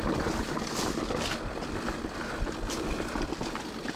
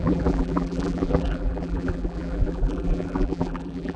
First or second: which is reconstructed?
second